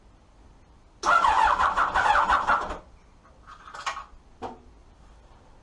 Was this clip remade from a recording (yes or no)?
no